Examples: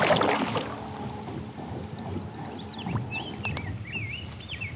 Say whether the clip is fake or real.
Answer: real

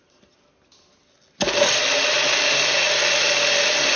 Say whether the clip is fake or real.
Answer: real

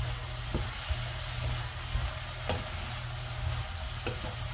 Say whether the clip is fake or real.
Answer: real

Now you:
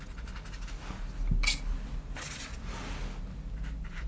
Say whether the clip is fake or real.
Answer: real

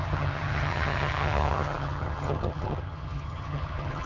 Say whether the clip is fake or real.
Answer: fake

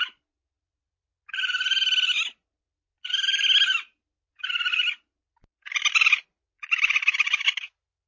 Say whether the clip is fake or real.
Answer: real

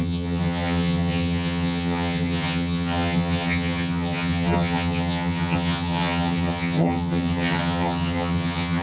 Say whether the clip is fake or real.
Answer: fake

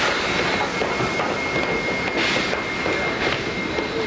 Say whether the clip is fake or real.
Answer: real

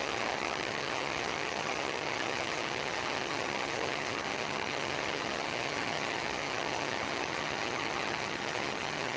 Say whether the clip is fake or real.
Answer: fake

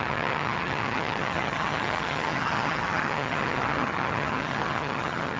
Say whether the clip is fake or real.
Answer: fake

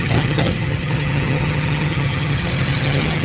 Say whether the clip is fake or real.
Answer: fake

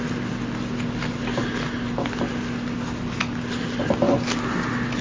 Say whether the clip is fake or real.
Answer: real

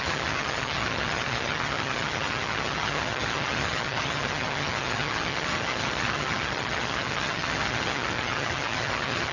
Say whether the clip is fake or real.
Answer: fake